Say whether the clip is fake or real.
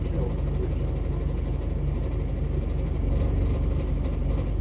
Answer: real